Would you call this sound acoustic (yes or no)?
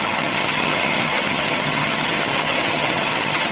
no